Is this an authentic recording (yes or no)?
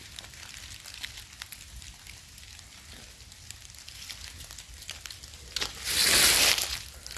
yes